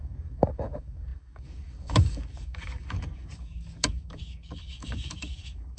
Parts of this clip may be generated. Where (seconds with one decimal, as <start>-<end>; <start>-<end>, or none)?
0.0-5.8